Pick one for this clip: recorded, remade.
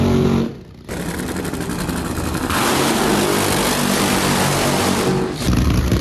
recorded